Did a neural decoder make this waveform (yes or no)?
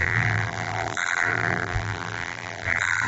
yes